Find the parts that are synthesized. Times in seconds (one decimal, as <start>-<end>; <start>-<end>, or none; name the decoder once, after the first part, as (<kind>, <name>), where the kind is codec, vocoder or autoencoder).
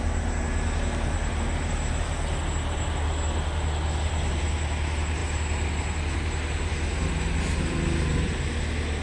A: none